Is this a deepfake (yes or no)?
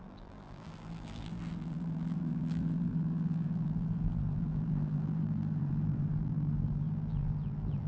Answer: yes